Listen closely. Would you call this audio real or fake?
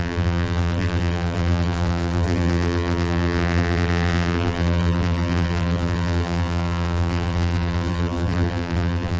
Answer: fake